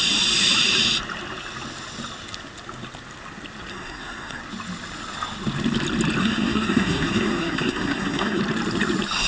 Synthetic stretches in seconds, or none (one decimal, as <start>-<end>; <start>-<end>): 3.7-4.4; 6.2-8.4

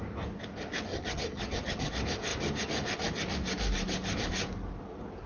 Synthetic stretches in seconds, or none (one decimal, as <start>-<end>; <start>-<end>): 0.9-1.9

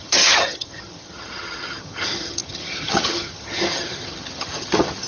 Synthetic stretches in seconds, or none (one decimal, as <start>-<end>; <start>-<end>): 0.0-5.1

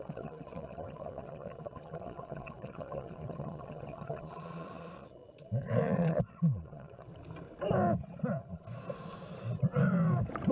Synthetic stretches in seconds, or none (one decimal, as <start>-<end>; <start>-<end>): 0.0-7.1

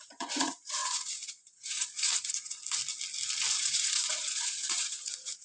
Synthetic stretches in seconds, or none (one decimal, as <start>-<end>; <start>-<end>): 0.0-2.8; 3.5-5.4

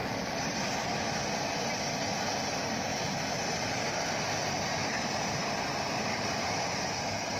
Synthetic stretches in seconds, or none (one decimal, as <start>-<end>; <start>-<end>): 0.0-0.5; 4.8-6.5

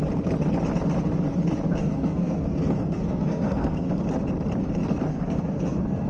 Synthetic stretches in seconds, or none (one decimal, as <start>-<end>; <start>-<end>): 1.8-3.9; 5.1-6.1